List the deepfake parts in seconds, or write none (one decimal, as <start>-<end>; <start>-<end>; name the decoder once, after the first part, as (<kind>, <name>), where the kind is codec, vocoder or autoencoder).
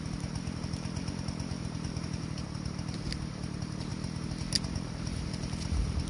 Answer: none